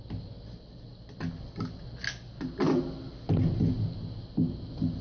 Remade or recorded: recorded